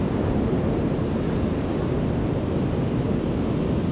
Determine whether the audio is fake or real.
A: real